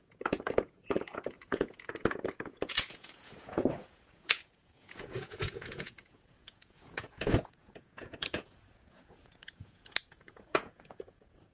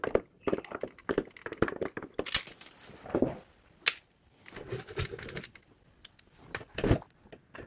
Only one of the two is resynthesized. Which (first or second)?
first